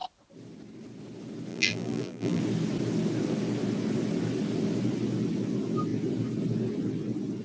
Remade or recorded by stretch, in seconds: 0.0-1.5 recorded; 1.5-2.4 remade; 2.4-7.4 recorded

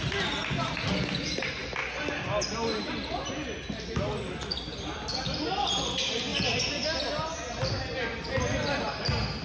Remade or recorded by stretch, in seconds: 0.0-9.4 recorded

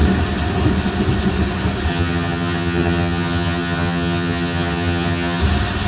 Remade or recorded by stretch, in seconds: 0.0-1.9 recorded; 1.9-5.4 remade; 5.4-5.9 recorded